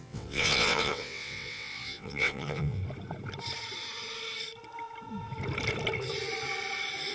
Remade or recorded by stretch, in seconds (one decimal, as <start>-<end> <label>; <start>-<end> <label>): 0.0-2.8 remade; 2.8-7.1 recorded